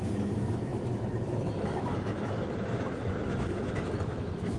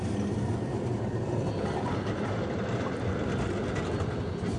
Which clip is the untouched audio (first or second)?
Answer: second